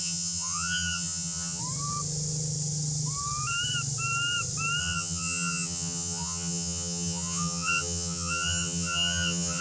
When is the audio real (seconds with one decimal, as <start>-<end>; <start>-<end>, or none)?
1.6-4.8